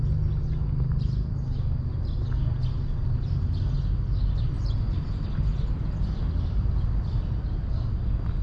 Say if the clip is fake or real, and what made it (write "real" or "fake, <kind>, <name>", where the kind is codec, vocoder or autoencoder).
real